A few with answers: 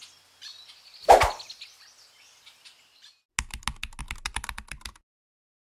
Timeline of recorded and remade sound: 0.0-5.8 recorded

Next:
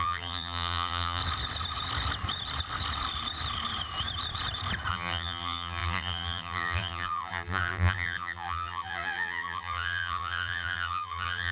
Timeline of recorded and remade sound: 0.0-1.2 remade; 1.2-4.9 recorded; 4.9-11.5 remade

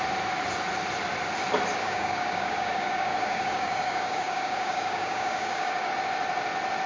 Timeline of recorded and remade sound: 0.0-1.8 recorded; 1.8-5.9 remade; 5.9-6.9 recorded

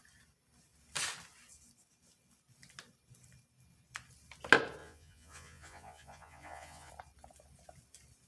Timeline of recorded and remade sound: 0.0-4.8 recorded; 4.8-6.9 remade; 6.9-8.3 recorded

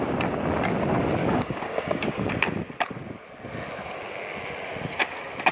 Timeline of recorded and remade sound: 0.0-1.2 recorded; 1.2-2.3 remade; 2.3-5.5 recorded

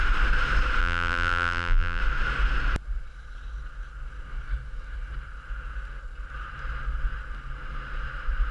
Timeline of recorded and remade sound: 0.0-0.8 recorded; 0.8-2.0 remade; 2.0-8.5 recorded

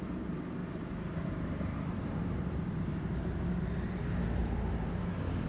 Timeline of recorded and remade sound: 0.0-0.6 recorded; 0.6-3.3 remade; 3.3-4.4 recorded; 4.4-5.5 remade

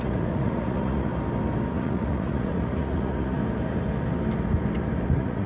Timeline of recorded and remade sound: 0.0-1.1 remade; 1.1-1.7 recorded; 1.7-3.4 remade; 3.4-5.1 recorded; 5.1-5.5 remade